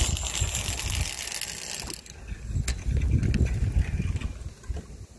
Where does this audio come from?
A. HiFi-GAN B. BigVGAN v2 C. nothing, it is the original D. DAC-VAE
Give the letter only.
C